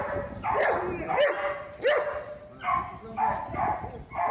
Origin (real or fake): real